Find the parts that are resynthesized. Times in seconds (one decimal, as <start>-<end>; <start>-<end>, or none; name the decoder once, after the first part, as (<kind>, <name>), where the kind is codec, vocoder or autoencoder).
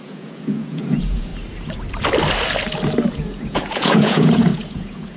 0.0-1.3 (vocoder, Vocos); 3.1-5.2